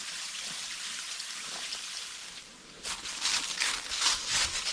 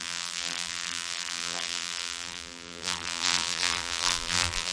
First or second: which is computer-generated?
second